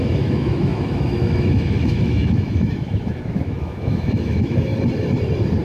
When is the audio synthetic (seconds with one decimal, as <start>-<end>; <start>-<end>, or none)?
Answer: 0.0-4.7